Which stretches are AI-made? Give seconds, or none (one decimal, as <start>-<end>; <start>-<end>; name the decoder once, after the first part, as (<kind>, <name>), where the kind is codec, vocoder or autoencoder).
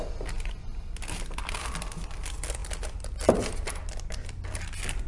none